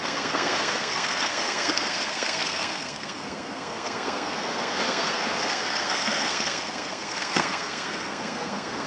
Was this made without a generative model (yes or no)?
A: no